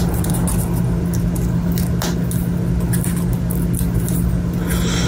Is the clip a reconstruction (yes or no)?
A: no